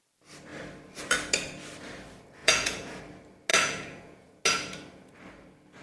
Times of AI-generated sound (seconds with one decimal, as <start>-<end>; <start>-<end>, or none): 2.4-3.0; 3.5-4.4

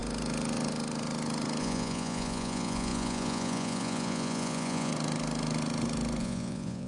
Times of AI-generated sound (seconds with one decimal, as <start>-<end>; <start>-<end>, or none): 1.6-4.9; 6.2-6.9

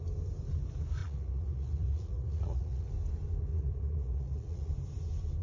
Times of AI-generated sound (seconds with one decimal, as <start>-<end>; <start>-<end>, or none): 1.0-2.9; 3.5-4.7

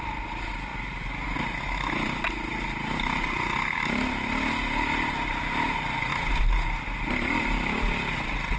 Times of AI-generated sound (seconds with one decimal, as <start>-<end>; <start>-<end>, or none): none